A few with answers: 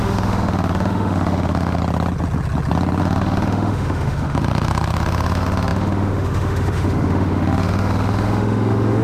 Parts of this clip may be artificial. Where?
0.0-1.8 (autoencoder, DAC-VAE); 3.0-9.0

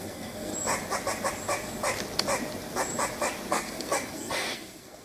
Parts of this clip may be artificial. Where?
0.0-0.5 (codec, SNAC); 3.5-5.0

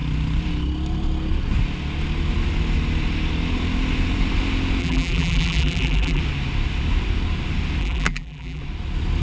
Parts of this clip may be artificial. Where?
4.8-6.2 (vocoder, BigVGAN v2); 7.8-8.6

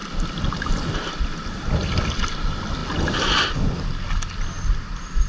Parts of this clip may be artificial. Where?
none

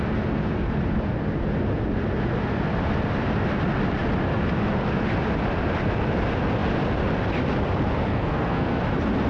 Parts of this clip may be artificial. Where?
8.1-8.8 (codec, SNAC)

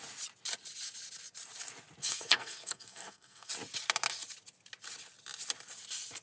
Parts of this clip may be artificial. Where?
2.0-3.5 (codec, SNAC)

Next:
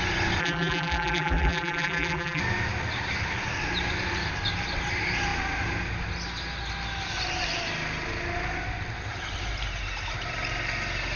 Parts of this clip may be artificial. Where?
0.4-2.4 (vocoder, BigVGAN v2)